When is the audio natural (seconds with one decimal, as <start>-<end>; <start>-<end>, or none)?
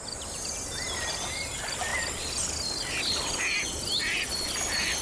0.0-5.0